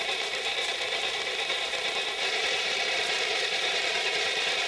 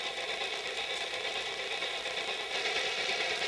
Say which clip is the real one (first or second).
second